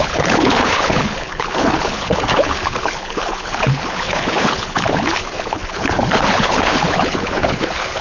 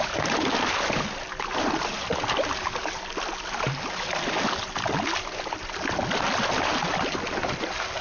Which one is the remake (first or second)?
first